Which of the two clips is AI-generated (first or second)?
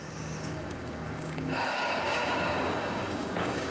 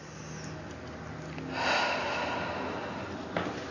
first